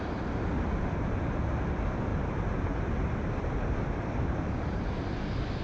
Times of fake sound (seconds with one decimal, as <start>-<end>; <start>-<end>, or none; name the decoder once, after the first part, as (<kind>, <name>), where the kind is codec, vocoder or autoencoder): none